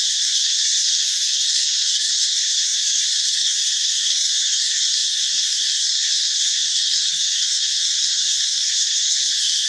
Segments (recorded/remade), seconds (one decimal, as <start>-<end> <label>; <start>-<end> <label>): 0.0-9.7 remade